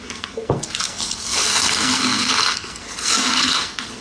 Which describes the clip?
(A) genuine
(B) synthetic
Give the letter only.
B